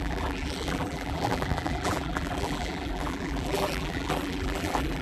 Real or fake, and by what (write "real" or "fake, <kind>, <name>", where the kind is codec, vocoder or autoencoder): fake, vocoder, BigVGAN v2